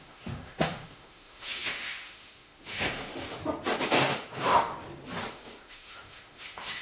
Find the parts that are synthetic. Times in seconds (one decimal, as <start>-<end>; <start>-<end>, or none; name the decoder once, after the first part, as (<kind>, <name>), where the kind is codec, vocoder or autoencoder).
0.0-3.4 (autoencoder, DAC-VAE); 3.9-4.7; 5.3-6.8